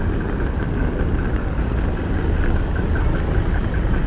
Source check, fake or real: real